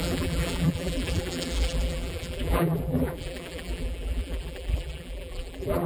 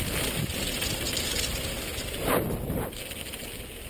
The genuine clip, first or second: second